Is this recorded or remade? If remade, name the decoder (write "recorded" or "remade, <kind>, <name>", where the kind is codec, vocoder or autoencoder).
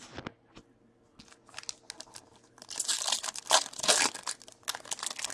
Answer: recorded